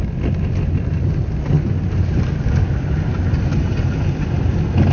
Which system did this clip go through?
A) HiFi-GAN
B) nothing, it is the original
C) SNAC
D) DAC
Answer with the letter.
B